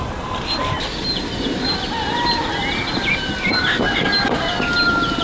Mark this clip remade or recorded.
recorded